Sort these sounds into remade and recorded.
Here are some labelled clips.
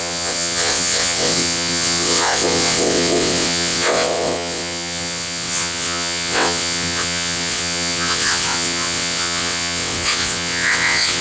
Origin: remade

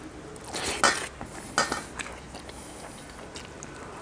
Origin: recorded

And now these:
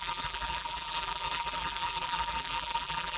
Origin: remade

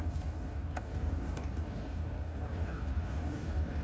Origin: remade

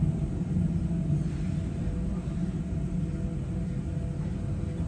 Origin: recorded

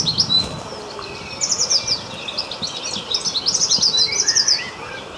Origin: recorded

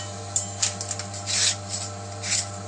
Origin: recorded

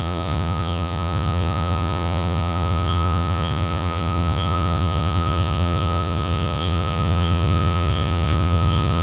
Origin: remade